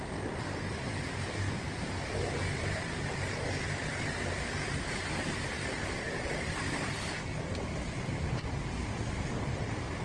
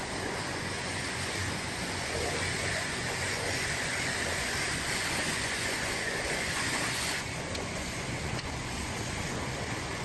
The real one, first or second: first